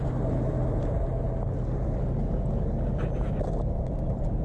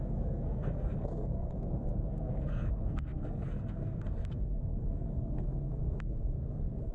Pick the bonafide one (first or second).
first